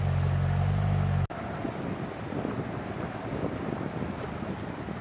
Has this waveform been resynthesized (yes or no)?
no